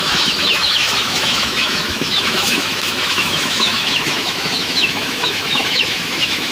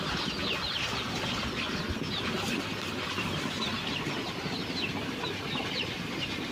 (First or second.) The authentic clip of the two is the second